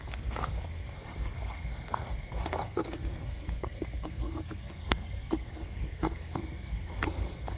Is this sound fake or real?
fake